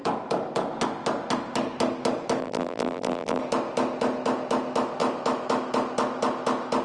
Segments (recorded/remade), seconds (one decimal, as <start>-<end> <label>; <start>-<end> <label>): 0.0-2.4 recorded; 2.4-3.4 remade; 3.4-6.8 recorded